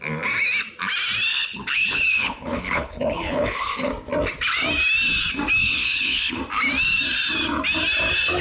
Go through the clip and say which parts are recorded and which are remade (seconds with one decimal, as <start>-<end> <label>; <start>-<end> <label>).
0.0-1.3 recorded; 1.3-3.9 remade; 3.9-5.6 recorded; 5.6-6.4 remade; 6.4-8.4 recorded